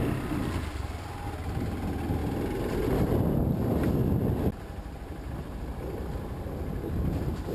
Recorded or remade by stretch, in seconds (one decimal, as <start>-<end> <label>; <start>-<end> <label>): 0.0-7.5 recorded

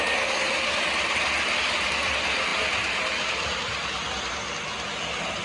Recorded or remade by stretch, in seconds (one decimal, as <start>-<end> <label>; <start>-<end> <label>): 0.0-5.4 recorded

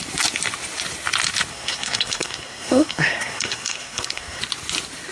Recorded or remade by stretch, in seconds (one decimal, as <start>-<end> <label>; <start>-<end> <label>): 0.0-1.5 recorded; 1.5-4.4 remade; 4.4-5.1 recorded

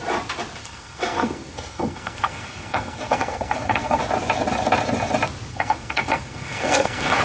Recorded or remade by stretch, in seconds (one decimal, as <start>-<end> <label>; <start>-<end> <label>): 0.0-0.6 recorded; 0.6-4.0 remade; 4.0-5.5 recorded; 5.5-7.2 remade

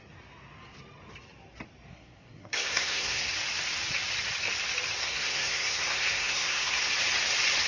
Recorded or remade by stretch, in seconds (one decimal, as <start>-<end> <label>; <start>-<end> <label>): 0.0-1.9 recorded; 1.9-3.3 remade; 3.3-5.0 recorded; 5.0-6.9 remade; 6.9-7.7 recorded

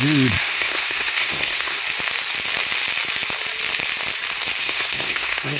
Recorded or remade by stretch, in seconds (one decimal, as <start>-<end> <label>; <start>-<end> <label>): 0.0-0.4 recorded; 0.4-1.8 remade; 1.8-4.6 recorded; 4.6-5.6 remade